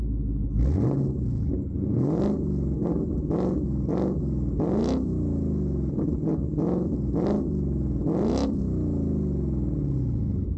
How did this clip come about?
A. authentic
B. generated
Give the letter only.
A